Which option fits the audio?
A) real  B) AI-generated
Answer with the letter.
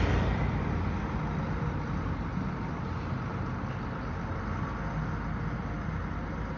A